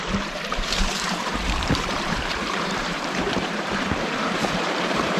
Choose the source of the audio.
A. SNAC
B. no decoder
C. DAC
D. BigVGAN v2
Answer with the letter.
D